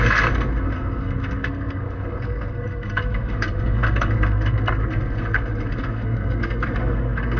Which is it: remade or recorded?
remade